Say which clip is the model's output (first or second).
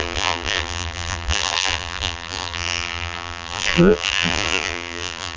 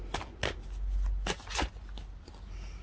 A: first